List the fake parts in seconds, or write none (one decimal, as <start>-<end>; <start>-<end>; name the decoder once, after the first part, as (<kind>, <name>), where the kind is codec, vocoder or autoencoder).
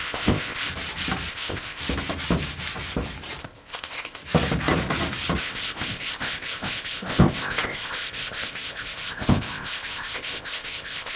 0.0-0.7 (codec, ZipCodec); 1.3-1.8; 3.4-4.2; 5.4-11.2